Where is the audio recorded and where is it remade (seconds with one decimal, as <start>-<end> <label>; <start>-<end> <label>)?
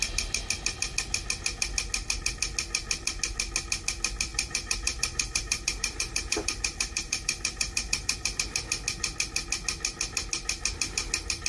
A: 0.0-4.3 recorded; 4.3-8.4 remade; 8.4-11.5 recorded